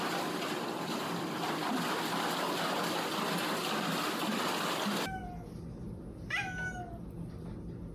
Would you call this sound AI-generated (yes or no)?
no